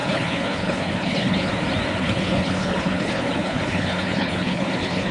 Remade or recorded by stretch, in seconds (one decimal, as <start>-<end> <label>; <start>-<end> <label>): 0.0-1.5 remade; 1.5-2.0 recorded; 2.0-5.1 remade